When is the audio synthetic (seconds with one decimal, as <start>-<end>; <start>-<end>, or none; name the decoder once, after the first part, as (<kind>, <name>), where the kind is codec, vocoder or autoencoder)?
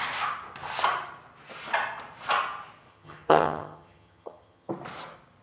2.9-4.7 (vocoder, HiFi-GAN)